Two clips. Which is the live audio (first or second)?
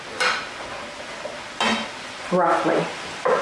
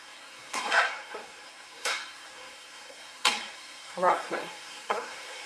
first